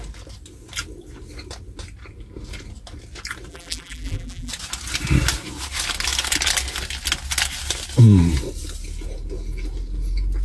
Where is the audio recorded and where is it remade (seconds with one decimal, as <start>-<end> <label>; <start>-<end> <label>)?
0.0-3.5 recorded; 3.5-4.5 remade; 4.5-10.4 recorded